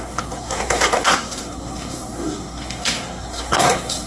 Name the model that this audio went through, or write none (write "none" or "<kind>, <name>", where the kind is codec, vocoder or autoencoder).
codec, SNAC